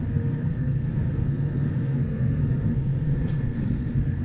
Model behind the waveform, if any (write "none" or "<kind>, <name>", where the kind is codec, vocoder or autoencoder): codec, SNAC